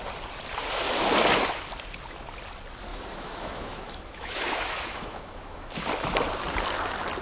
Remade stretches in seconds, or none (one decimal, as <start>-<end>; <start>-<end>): 2.9-5.7